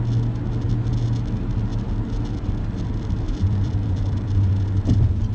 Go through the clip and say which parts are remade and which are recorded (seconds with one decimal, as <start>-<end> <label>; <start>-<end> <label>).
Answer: 0.0-1.7 recorded; 1.7-4.5 remade; 4.5-5.3 recorded